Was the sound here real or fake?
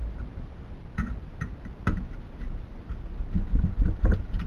real